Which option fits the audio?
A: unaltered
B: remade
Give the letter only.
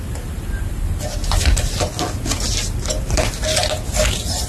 A